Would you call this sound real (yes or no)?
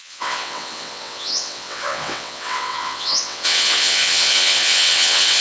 no